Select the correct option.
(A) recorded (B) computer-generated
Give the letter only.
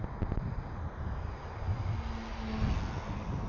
A